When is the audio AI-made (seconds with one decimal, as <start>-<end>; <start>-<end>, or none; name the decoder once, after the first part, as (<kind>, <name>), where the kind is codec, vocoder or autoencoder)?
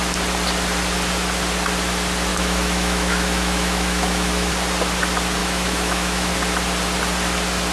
2.3-4.5 (autoencoder, DAC-VAE); 5.4-6.3